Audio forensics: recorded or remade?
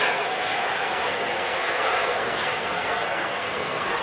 remade